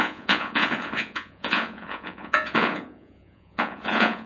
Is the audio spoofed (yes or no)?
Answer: yes